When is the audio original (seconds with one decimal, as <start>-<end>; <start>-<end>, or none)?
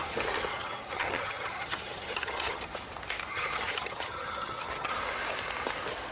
0.0-0.5; 2.6-3.3; 4.9-6.1